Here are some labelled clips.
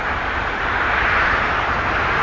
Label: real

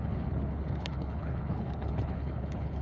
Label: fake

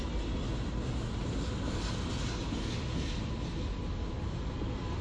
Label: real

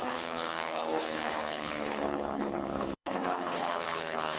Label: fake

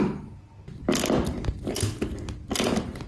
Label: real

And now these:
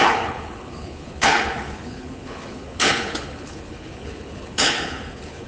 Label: fake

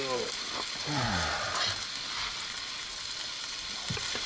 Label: real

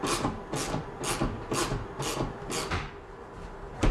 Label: real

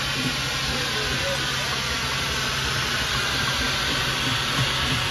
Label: real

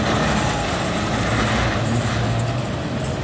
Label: real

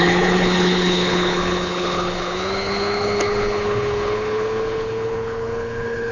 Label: fake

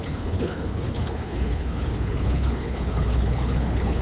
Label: fake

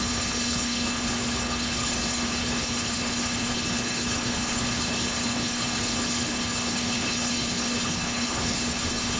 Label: fake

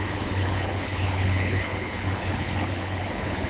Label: fake